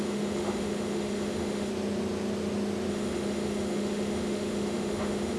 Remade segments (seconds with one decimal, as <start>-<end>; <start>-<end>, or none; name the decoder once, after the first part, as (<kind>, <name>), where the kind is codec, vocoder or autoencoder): 0.0-1.7 (autoencoder, DAC-VAE); 2.9-5.4